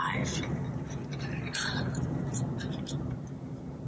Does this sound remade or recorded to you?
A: recorded